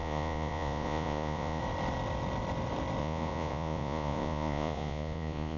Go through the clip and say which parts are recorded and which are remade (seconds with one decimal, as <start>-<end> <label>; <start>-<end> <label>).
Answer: 0.0-1.6 remade; 1.6-3.0 recorded; 3.0-5.6 remade